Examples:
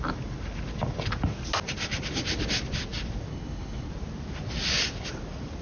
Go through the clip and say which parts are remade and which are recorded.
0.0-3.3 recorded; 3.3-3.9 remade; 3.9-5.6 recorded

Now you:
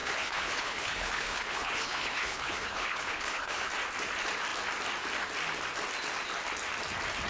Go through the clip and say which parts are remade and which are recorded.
0.0-3.7 remade; 3.7-7.3 recorded

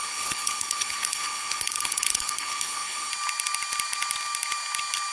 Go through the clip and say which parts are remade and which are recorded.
0.0-3.1 remade; 3.1-5.1 recorded

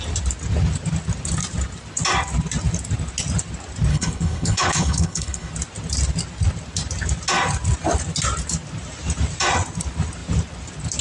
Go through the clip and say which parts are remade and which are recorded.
0.0-3.9 recorded; 3.9-5.5 remade; 5.5-11.0 recorded